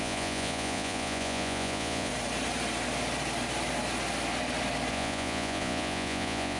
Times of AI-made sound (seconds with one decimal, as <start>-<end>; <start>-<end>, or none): 0.0-2.1; 4.9-6.6